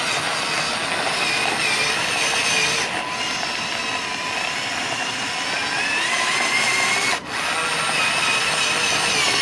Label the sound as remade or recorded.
recorded